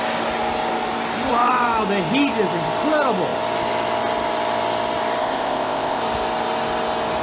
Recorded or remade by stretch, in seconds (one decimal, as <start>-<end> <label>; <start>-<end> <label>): 0.0-5.2 recorded; 5.2-6.0 remade; 6.0-7.2 recorded